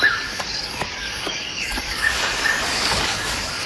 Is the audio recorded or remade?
remade